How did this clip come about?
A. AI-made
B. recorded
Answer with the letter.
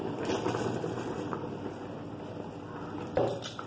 A